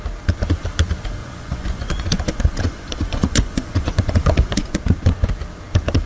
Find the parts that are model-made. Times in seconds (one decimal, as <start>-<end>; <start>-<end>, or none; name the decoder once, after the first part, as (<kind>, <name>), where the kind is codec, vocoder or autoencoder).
1.2-4.8 (vocoder, Vocos)

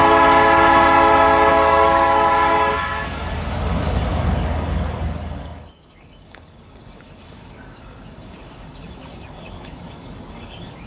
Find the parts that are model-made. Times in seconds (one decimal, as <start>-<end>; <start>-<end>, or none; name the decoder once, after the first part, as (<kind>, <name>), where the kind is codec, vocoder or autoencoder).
1.5-10.9 (codec, DAC)

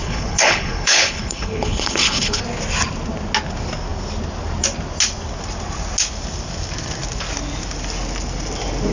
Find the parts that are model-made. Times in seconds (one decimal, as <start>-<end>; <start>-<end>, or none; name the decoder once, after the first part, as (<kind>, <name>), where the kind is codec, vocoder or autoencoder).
0.0-2.4 (codec, HILCodec)

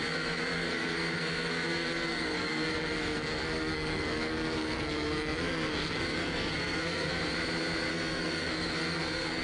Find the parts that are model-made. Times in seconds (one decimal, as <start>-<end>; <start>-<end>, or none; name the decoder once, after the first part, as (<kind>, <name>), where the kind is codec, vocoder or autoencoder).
0.0-7.2 (codec, SNAC); 7.9-9.4

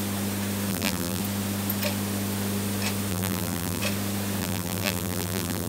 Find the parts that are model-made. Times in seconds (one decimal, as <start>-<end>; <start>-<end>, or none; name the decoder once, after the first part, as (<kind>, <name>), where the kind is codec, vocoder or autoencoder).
0.7-1.2 (vocoder, BigVGAN v2); 3.1-3.8; 4.4-5.7

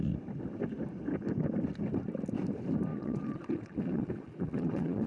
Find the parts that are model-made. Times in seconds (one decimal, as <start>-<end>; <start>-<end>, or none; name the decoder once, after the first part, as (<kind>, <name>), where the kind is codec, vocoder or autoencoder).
2.9-5.1 (vocoder, Vocos)

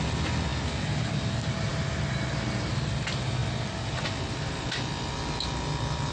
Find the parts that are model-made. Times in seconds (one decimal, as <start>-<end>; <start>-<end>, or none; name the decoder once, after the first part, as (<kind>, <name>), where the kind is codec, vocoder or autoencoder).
none

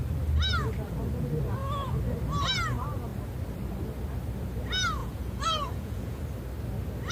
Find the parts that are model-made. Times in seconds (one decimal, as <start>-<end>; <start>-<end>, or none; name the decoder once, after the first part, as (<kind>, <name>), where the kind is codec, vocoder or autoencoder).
5.0-6.2 (vocoder, Vocos)